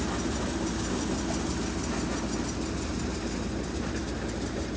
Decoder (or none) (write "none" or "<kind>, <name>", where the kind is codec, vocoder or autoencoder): none